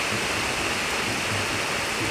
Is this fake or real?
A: real